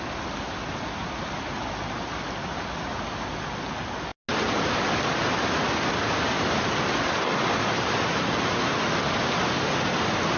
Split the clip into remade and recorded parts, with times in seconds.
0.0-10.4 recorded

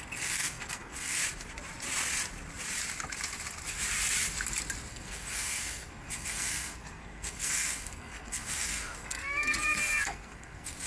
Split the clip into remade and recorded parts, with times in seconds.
0.0-1.2 remade; 1.2-4.9 recorded; 4.9-10.9 remade